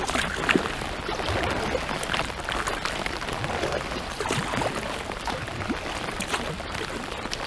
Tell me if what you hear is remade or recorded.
recorded